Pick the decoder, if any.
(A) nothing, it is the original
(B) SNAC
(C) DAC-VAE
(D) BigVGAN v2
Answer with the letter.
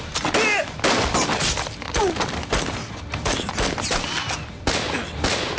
A